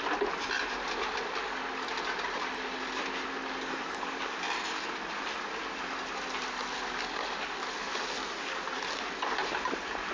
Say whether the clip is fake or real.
real